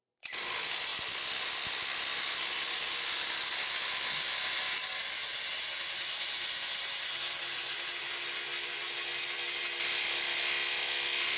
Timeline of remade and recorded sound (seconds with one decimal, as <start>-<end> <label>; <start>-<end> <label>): 0.0-11.4 recorded